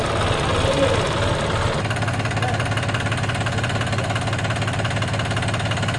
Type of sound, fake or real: real